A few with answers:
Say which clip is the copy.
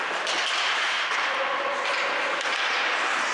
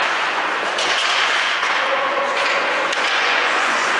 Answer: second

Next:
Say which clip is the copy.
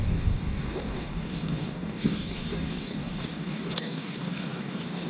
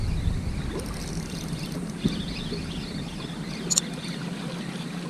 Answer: first